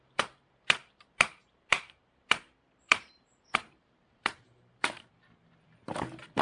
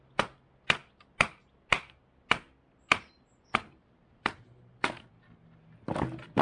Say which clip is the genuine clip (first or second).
second